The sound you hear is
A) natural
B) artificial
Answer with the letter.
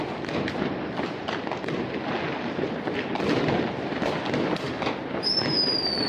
A